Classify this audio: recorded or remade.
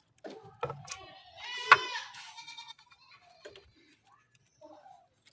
recorded